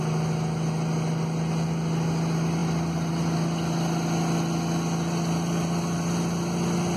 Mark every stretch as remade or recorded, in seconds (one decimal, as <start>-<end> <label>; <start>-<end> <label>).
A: 0.0-7.0 recorded